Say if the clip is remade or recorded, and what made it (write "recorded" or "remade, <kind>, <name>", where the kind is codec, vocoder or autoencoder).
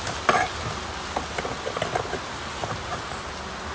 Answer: recorded